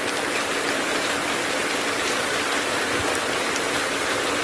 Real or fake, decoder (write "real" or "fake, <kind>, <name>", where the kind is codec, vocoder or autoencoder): fake, vocoder, BigVGAN v2